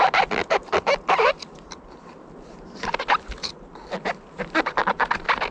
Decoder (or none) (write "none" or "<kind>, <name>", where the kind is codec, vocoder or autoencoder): none